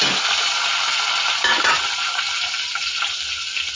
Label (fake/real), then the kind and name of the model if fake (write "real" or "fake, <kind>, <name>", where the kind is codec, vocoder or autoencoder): real